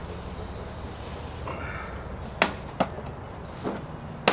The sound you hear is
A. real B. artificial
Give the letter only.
A